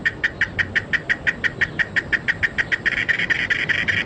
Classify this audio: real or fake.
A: real